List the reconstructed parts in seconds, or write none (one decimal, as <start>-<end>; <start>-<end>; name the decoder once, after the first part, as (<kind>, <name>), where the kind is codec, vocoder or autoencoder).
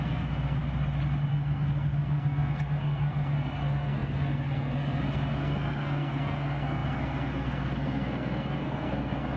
0.0-0.6 (codec, SNAC); 1.3-9.4